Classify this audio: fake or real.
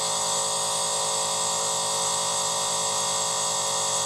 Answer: real